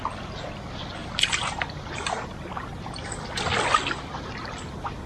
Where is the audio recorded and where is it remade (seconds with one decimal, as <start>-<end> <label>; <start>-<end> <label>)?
0.0-1.0 recorded; 1.0-3.1 remade; 3.1-5.1 recorded